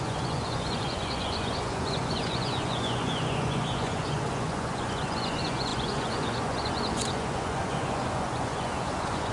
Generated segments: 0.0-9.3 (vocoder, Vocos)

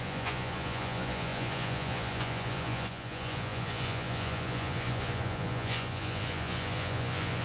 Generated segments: 0.0-7.4 (vocoder, Vocos)